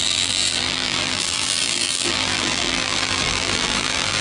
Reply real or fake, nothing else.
fake